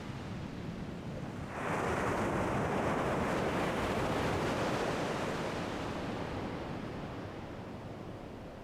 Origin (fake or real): real